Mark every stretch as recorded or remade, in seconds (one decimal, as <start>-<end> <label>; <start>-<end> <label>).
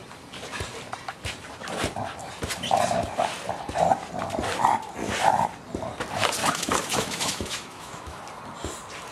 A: 0.0-6.4 recorded; 6.4-8.2 remade; 8.2-9.1 recorded